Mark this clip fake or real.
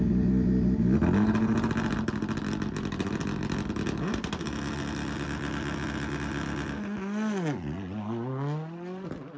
real